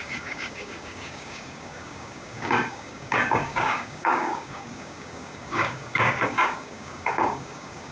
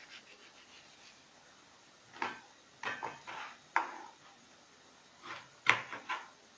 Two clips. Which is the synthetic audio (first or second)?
first